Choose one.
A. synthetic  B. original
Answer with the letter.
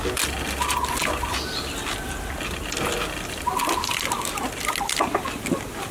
B